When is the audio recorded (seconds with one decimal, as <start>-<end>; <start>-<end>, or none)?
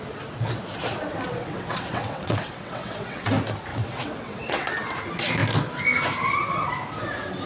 0.0-1.4; 3.3-3.7; 4.7-7.5